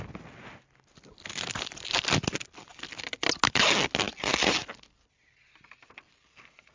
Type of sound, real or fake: real